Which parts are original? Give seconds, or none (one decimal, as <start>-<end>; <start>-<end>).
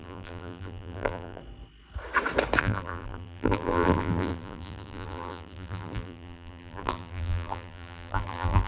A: 1.4-2.6